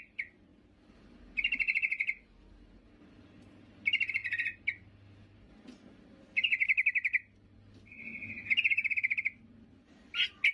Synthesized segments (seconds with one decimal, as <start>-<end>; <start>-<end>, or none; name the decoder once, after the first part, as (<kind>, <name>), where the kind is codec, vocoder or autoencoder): none